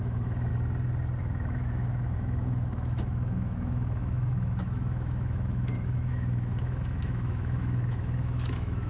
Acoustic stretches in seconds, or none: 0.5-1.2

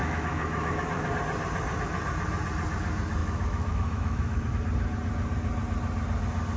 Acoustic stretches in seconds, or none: 1.1-3.2; 4.5-6.6

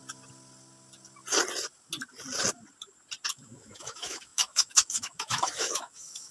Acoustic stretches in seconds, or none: 0.0-3.3

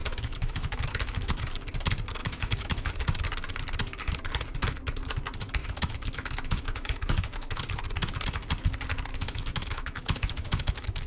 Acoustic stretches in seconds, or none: 1.4-2.2; 2.9-5.6; 7.6-9.1

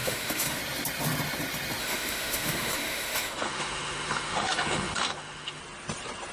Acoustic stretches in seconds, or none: 0.6-1.8; 5.6-6.3